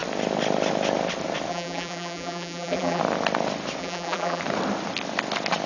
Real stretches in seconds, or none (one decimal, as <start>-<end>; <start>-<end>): 0.0-1.5; 3.0-3.8; 4.4-5.7